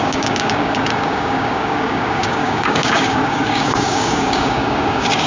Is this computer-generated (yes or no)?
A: yes